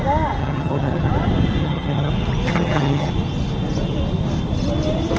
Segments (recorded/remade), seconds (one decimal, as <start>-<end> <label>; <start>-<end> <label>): 0.0-0.4 recorded; 0.4-1.1 remade; 1.1-1.6 recorded; 1.6-2.1 remade; 2.1-2.5 recorded; 2.5-3.1 remade; 3.1-5.2 recorded